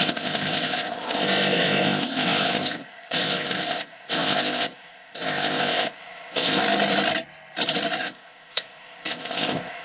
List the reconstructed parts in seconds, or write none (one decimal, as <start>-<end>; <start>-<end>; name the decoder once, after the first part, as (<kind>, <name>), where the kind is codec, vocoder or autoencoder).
0.0-6.6 (codec, ZipCodec); 8.0-9.8

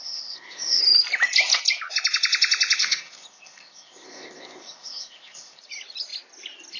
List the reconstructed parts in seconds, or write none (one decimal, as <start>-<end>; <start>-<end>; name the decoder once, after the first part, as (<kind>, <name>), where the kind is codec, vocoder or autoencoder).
0.0-0.8 (codec, ZipCodec); 2.8-5.6

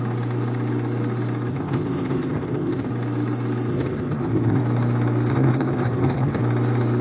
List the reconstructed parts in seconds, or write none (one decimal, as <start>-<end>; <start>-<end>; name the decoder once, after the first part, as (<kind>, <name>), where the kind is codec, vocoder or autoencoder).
1.5-2.9 (codec, ZipCodec); 3.7-4.6; 5.3-6.4